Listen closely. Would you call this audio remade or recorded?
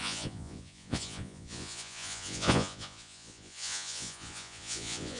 remade